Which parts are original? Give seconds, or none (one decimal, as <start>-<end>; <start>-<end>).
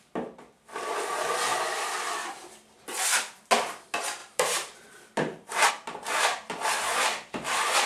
0.0-4.2; 5.7-7.9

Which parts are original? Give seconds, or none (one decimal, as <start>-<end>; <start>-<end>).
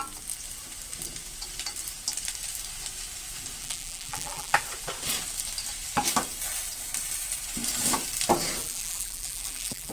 0.0-3.6; 4.6-8.6